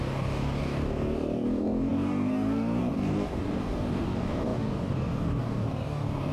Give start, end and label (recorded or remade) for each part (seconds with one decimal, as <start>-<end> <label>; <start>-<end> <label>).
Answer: 0.0-6.3 remade